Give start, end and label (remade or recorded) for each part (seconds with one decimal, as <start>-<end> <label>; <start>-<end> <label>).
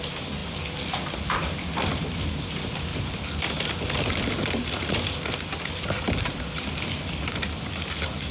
0.0-8.3 recorded